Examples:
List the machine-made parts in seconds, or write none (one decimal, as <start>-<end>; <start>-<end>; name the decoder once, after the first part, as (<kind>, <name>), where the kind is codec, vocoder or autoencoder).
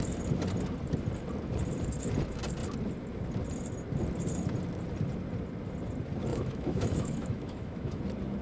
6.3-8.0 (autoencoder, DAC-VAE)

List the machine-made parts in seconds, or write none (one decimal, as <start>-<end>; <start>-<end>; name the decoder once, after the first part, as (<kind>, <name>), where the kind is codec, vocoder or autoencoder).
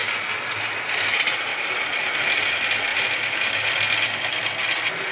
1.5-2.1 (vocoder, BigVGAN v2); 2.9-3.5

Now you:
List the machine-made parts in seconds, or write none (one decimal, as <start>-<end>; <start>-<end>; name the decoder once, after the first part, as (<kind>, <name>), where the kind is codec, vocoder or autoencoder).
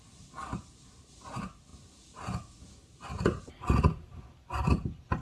none